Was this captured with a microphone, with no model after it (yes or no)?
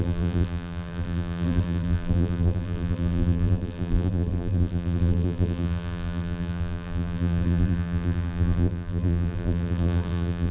no